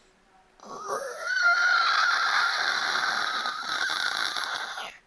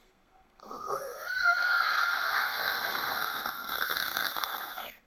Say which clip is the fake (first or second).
second